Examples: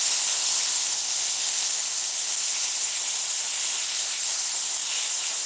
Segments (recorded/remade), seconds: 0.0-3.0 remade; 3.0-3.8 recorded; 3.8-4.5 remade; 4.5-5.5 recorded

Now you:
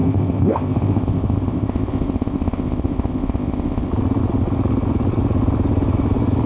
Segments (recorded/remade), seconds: 0.0-3.9 remade; 3.9-6.5 recorded

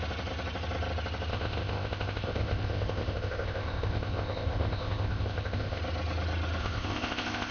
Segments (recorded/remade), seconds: 0.0-1.3 recorded; 1.3-5.8 remade; 5.8-6.6 recorded; 6.6-7.5 remade

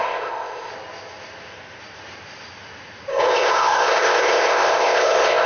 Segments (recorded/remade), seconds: 0.0-0.7 remade; 0.7-3.1 recorded; 3.1-5.5 remade